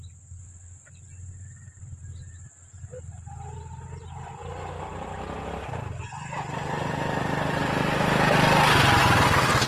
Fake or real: real